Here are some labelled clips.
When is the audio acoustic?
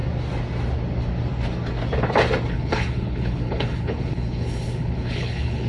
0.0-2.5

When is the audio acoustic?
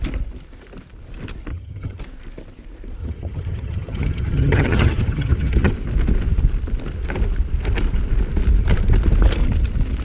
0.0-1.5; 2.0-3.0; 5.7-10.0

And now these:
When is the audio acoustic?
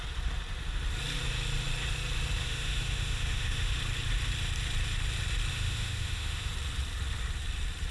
0.0-2.4; 3.7-5.5; 6.5-7.9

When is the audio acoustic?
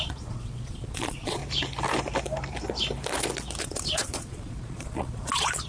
1.4-3.6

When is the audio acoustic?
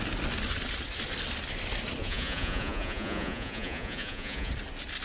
0.0-2.0; 4.5-5.0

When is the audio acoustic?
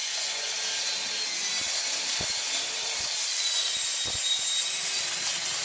0.5-5.6